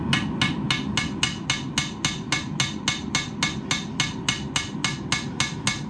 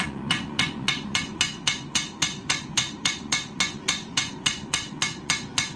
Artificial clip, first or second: second